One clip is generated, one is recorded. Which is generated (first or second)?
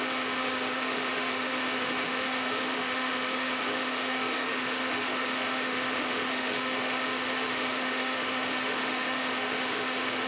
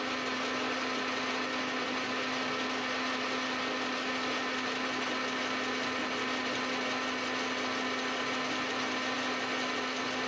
first